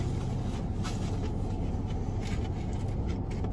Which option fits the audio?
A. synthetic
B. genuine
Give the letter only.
B